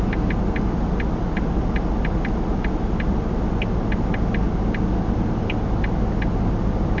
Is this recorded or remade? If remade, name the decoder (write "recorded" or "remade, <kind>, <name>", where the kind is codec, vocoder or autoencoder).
recorded